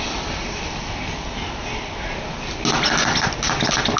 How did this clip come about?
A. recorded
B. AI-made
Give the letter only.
A